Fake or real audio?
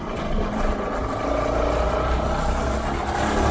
real